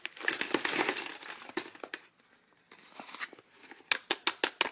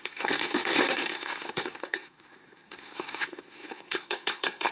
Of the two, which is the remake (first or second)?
second